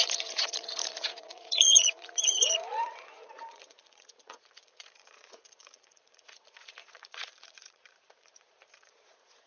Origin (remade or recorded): remade